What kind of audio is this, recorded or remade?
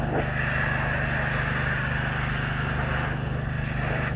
recorded